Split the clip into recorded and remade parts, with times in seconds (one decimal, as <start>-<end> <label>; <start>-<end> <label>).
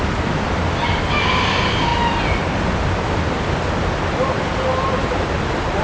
0.0-5.8 recorded